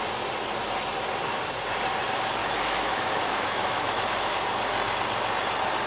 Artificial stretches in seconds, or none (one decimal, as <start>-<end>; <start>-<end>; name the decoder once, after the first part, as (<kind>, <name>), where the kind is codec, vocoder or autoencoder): 2.4-4.3 (autoencoder, DAC-VAE)